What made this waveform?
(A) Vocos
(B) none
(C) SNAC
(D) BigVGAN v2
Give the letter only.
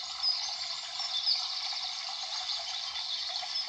B